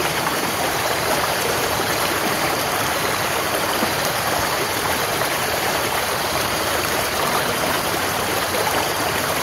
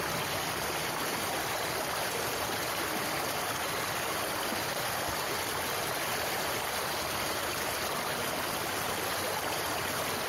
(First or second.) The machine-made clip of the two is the first